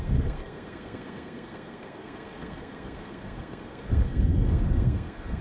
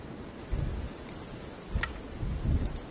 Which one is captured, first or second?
second